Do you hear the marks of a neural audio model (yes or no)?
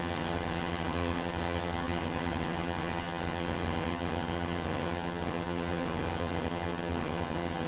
yes